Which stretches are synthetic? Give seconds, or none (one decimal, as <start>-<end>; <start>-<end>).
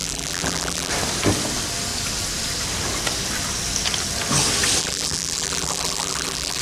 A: 0.0-0.9; 4.8-6.6